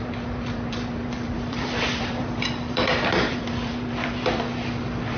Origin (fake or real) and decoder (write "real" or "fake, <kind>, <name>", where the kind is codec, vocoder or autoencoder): fake, vocoder, BigVGAN v2